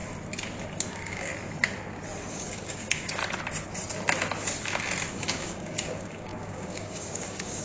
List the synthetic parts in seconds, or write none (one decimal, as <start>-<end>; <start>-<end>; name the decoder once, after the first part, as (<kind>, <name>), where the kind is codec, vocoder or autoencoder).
0.9-1.3 (codec, DAC); 2.3-3.2; 5.1-7.6